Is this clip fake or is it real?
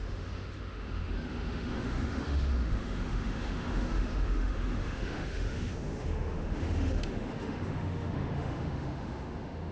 fake